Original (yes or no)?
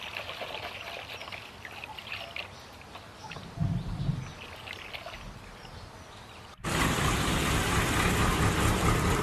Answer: no